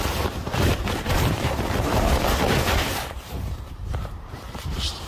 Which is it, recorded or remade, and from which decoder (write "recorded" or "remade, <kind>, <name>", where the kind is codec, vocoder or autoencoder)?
remade, vocoder, BigVGAN v2